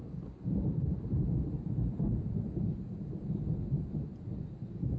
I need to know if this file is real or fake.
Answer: real